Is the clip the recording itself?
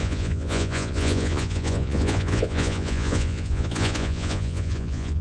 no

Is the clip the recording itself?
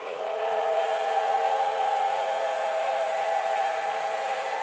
no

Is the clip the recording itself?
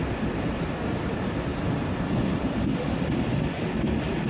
yes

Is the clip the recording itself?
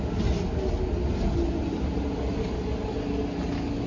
yes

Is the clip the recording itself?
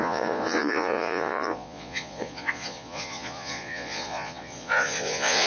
no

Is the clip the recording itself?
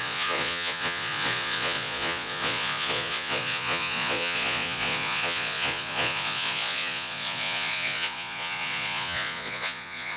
no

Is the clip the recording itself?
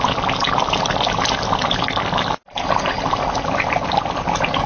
yes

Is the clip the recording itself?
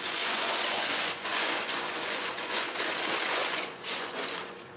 no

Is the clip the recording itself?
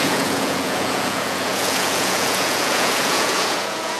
no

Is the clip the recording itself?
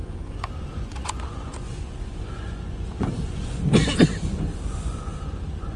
no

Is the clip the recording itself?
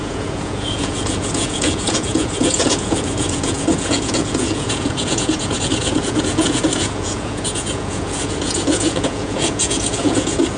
no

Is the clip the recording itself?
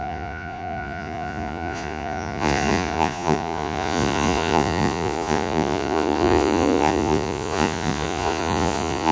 no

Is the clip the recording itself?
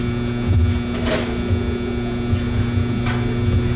yes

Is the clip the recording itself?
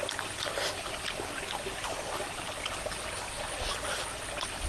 yes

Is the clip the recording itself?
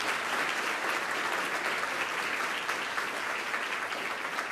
yes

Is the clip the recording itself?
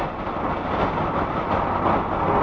yes